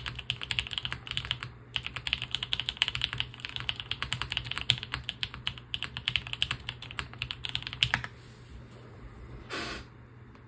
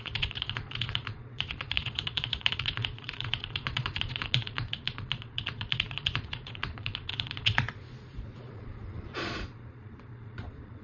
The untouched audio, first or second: first